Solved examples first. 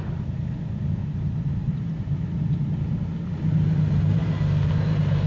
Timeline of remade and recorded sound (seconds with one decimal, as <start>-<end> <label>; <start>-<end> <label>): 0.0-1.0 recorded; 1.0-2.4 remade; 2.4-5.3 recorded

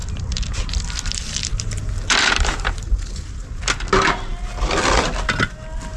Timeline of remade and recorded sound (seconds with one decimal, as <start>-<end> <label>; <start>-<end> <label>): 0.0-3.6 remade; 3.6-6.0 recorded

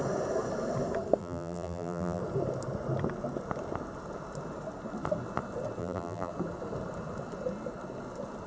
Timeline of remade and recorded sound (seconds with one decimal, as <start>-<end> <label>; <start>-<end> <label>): 0.0-1.2 recorded; 1.2-2.2 remade; 2.2-5.8 recorded; 5.8-6.3 remade; 6.3-8.5 recorded

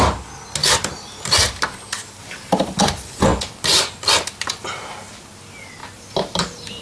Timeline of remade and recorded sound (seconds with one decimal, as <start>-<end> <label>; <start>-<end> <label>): 0.0-2.2 recorded; 2.2-2.8 remade; 2.8-5.8 recorded; 5.8-6.8 remade